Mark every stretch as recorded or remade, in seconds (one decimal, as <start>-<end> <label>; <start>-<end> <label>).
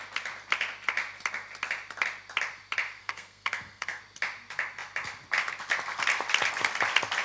0.0-3.0 recorded; 3.0-4.0 remade; 4.0-7.2 recorded